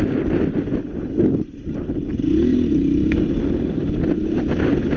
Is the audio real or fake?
real